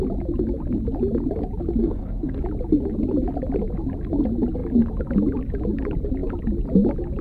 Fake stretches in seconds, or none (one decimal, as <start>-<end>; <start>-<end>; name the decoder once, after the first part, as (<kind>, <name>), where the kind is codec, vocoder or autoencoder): 1.8-2.4 (codec, SNAC)